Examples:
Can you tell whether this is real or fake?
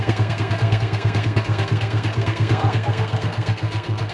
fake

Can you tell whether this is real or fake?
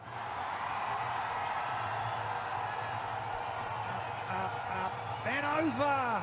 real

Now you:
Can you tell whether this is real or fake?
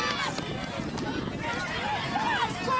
real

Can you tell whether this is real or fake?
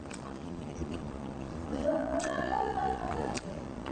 fake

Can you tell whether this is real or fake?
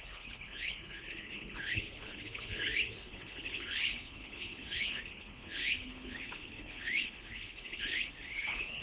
fake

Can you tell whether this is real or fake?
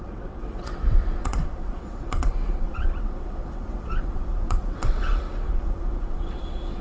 fake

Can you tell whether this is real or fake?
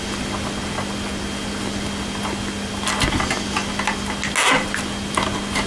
real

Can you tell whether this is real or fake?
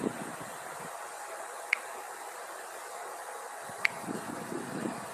real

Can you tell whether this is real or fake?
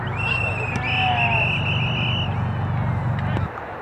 real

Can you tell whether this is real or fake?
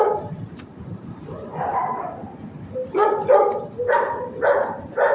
fake